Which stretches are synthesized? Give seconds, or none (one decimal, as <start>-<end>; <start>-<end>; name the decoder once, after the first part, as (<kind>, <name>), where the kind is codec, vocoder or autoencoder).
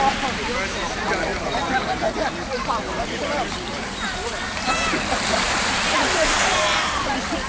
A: 1.3-2.1 (vocoder, BigVGAN v2); 2.5-4.6